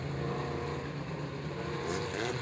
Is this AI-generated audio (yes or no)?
no